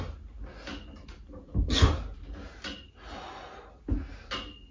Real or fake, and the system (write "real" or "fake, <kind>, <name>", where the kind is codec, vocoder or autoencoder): real